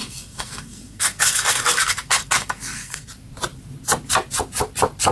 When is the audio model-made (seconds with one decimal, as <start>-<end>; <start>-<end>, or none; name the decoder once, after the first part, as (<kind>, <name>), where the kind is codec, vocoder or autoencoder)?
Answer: 0.0-3.1 (codec, SNAC)